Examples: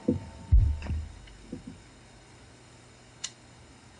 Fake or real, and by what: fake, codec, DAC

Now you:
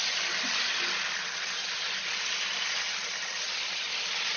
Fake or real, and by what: real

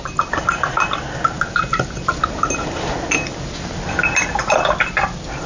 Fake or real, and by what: real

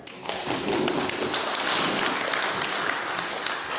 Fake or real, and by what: real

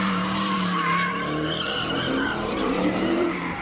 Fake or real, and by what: fake, vocoder, BigVGAN v2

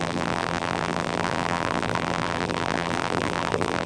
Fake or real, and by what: fake, vocoder, BigVGAN v2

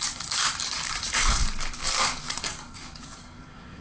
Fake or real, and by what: fake, codec, DAC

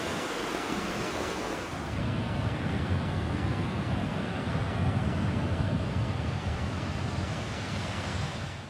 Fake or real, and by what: fake, codec, SNAC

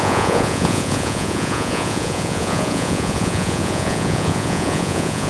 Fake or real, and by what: fake, vocoder, Vocos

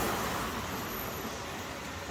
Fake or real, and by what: real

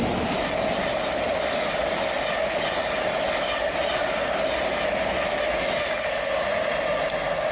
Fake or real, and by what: real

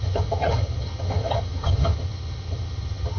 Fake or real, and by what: fake, vocoder, HiFi-GAN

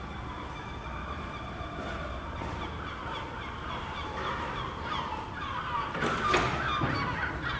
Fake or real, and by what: real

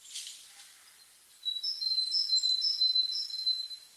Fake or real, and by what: real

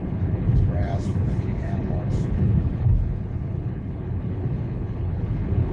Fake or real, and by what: fake, codec, HILCodec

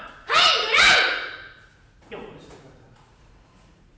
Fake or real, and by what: fake, vocoder, Vocos